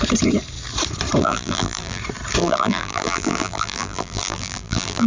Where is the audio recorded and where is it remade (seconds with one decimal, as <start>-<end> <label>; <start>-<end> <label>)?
0.0-1.2 recorded; 1.2-2.0 remade; 2.0-2.4 recorded; 2.4-5.1 remade

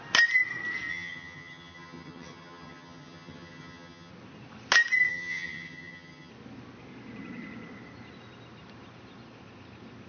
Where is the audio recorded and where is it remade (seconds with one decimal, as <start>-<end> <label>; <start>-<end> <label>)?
0.0-0.9 recorded; 0.9-4.1 remade; 4.1-5.1 recorded; 5.1-6.3 remade; 6.3-10.1 recorded